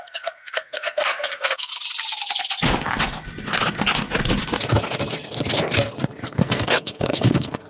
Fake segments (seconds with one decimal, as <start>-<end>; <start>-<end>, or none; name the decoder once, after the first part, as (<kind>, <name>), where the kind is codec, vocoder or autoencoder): 0.0-1.7 (codec, SNAC); 6.2-7.7